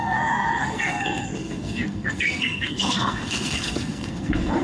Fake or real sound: fake